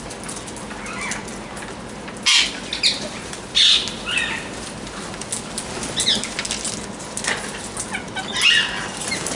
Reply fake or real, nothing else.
real